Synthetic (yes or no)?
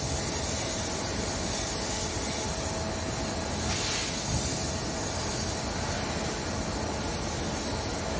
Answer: no